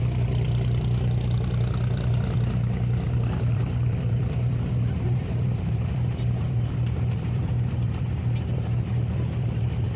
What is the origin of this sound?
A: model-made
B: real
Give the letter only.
A